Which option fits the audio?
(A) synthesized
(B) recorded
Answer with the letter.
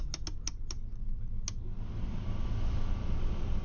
B